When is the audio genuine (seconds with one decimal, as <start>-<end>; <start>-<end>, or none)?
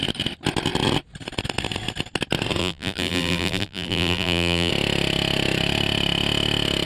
0.0-2.6; 4.7-6.8